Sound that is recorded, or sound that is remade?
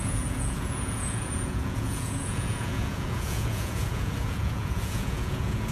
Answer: remade